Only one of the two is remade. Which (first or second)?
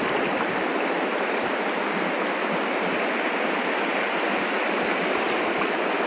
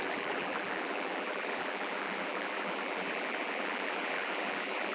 second